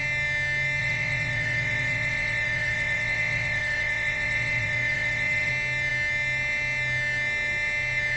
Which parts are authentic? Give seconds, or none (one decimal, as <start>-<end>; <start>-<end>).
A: 0.0-0.8; 5.5-8.2